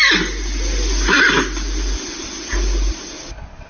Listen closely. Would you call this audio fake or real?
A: real